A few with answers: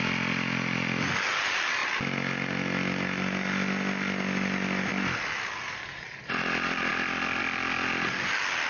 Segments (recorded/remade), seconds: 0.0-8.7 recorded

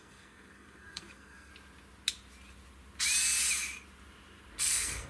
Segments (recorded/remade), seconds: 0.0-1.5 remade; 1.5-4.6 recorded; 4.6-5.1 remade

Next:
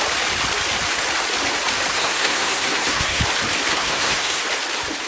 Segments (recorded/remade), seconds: 0.0-1.9 recorded; 1.9-3.2 remade; 3.2-3.7 recorded; 3.7-4.4 remade; 4.4-5.1 recorded

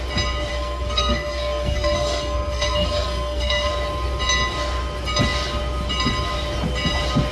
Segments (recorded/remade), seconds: 0.0-0.5 recorded; 0.5-3.7 remade; 3.7-7.3 recorded

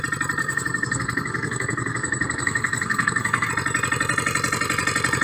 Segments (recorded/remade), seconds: 0.0-0.4 recorded; 0.4-3.5 remade; 3.5-5.2 recorded

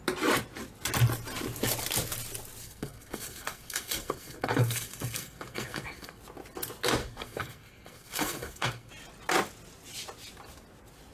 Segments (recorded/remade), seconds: 0.0-2.6 recorded; 2.6-6.2 remade; 6.2-7.0 recorded; 7.0-8.9 remade; 8.9-11.1 recorded